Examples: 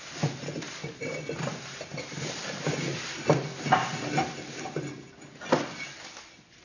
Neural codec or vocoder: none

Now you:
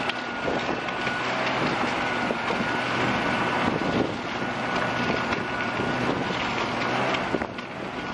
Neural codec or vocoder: none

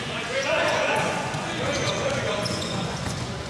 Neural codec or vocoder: vocoder, Vocos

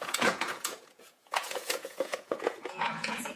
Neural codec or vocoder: vocoder, Vocos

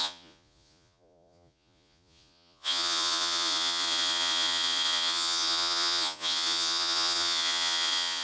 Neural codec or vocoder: vocoder, Vocos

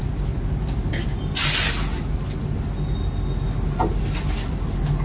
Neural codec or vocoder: none